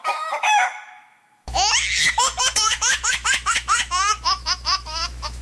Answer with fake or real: fake